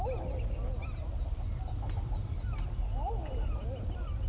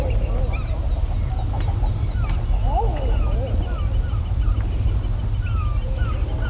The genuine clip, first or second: second